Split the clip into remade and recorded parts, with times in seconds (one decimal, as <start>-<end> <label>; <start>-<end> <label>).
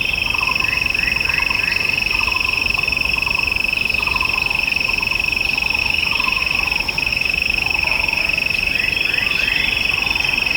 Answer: 0.0-5.8 recorded; 5.8-6.4 remade; 6.4-7.1 recorded; 7.1-8.2 remade; 8.2-10.6 recorded